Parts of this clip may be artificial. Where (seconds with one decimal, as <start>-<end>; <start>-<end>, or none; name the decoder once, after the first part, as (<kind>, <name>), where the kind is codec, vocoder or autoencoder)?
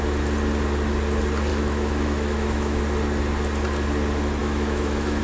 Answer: 1.5-2.8 (autoencoder, DAC-VAE); 4.4-5.2